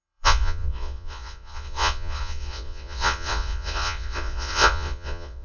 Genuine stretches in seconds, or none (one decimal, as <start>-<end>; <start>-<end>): none